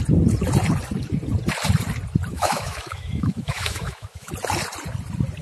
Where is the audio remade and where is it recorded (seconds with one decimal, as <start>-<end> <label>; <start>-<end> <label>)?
0.0-2.3 recorded; 2.3-4.3 remade; 4.3-5.4 recorded